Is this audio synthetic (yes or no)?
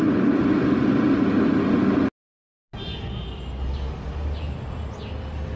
no